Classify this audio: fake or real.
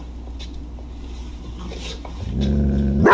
real